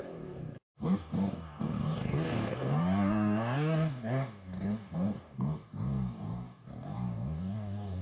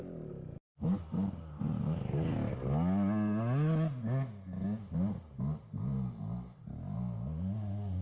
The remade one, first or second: first